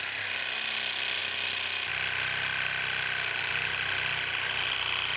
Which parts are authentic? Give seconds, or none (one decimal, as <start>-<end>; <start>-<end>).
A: 0.0-5.2